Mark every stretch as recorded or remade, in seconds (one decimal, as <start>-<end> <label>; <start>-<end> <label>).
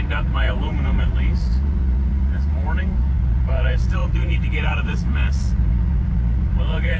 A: 0.0-7.0 remade